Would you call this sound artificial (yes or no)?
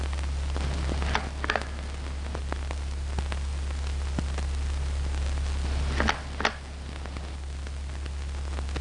no